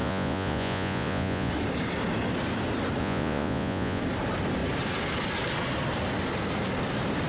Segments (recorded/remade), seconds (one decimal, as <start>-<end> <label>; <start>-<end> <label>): 0.0-1.5 remade; 1.5-3.0 recorded; 3.0-4.0 remade; 4.0-7.3 recorded